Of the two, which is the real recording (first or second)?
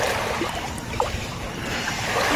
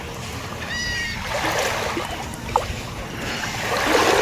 second